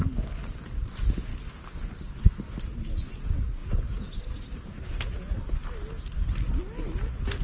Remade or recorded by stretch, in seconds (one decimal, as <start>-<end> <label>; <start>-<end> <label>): 0.0-3.6 recorded; 3.6-4.2 remade; 4.2-7.4 recorded